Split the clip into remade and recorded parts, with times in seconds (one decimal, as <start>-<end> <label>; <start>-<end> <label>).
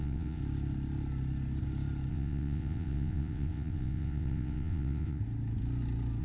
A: 0.0-0.4 remade; 0.4-2.1 recorded; 2.1-5.2 remade; 5.2-6.2 recorded